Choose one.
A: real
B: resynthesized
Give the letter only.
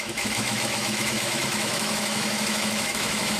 B